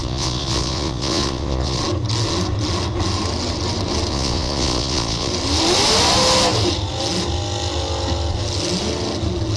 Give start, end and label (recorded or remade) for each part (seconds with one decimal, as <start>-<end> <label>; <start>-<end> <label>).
0.0-1.8 remade; 1.8-4.1 recorded; 4.1-5.3 remade; 5.3-9.6 recorded